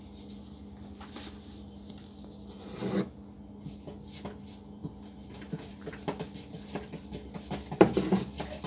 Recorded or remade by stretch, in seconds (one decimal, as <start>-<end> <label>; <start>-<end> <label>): 0.0-4.8 recorded; 4.8-7.4 remade; 7.4-8.7 recorded